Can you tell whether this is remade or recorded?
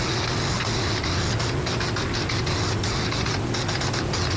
recorded